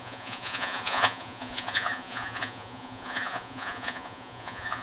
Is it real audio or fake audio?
fake